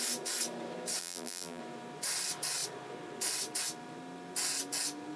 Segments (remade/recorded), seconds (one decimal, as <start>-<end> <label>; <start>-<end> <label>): 0.0-1.0 recorded; 1.0-1.6 remade; 1.6-5.2 recorded

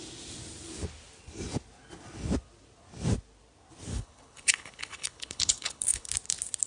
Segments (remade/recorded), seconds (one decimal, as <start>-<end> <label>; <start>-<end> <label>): 0.0-3.9 recorded; 3.9-6.1 remade; 6.1-6.7 recorded

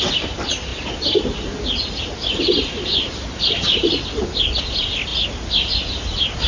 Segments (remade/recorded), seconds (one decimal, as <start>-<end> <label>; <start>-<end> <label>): 0.0-6.5 recorded

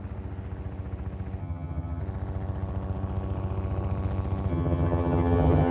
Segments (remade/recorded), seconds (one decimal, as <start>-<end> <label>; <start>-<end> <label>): 0.0-1.4 recorded; 1.4-2.0 remade; 2.0-4.5 recorded; 4.5-5.7 remade

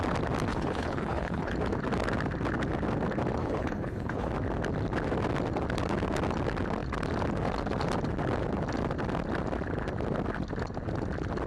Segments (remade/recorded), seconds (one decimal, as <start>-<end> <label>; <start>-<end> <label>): 0.0-0.5 recorded; 0.5-1.5 remade; 1.5-3.4 recorded; 3.4-4.3 remade; 4.3-11.5 recorded